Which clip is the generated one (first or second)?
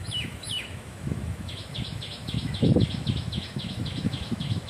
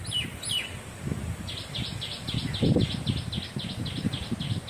first